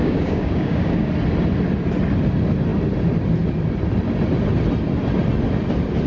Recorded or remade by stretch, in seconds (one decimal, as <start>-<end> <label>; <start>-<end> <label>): 0.0-1.1 remade; 1.1-6.1 recorded